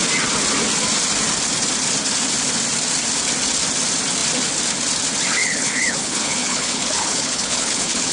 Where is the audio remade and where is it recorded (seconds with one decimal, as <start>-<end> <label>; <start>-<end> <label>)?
0.0-5.4 recorded; 5.4-8.1 remade